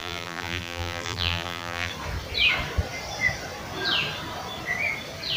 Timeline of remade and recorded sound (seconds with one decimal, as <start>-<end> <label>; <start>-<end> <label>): 0.0-1.9 remade; 1.9-5.4 recorded

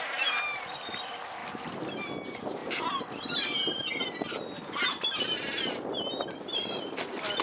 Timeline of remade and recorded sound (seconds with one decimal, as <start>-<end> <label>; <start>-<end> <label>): 0.0-7.4 recorded